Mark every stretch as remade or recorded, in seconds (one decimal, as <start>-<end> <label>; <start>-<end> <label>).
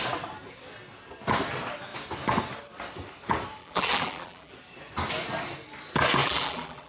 0.0-3.6 recorded; 3.6-4.5 remade; 4.5-6.2 recorded; 6.2-6.9 remade